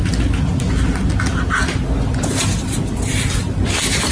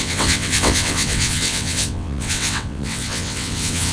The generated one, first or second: second